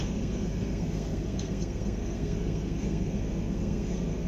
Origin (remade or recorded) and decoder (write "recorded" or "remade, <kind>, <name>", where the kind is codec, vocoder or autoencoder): remade, codec, SNAC